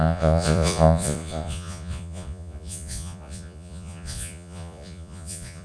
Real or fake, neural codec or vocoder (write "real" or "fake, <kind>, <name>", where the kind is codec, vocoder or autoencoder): fake, vocoder, Vocos